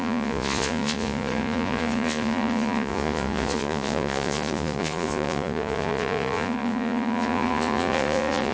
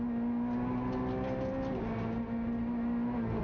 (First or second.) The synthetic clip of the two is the first